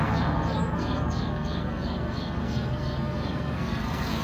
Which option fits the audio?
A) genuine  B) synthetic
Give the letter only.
B